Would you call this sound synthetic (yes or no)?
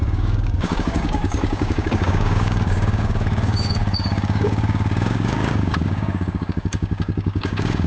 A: yes